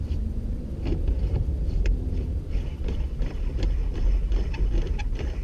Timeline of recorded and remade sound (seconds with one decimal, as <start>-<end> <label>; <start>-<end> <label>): 0.0-0.9 recorded; 0.9-4.1 remade; 4.1-5.4 recorded